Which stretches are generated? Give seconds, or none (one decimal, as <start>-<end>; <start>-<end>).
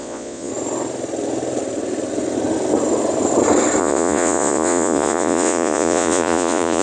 0.0-0.5; 3.8-6.8